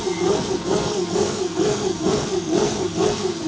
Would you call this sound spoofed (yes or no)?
yes